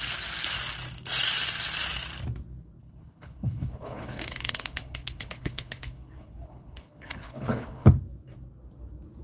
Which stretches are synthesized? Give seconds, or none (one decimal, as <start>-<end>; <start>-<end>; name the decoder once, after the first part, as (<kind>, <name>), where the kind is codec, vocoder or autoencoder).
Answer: 2.8-7.9 (codec, HILCodec)